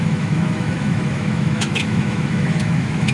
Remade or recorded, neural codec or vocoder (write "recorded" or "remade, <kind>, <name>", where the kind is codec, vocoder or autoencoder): remade, autoencoder, DAC-VAE